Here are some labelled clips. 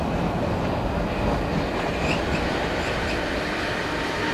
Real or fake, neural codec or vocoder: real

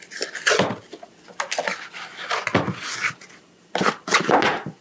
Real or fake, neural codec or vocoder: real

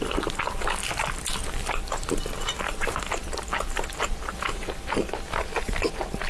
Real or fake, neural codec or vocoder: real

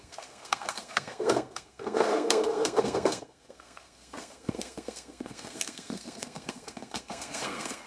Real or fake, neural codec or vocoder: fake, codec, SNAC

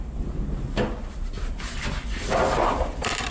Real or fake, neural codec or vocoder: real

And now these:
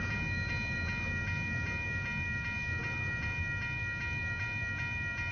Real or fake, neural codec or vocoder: real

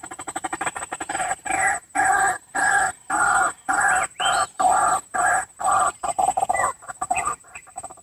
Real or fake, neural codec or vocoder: real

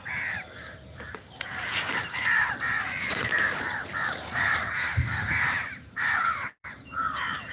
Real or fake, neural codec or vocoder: fake, vocoder, BigVGAN v2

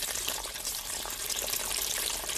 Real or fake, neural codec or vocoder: fake, vocoder, BigVGAN v2